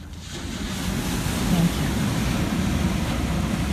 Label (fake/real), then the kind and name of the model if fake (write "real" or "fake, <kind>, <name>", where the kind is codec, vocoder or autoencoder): real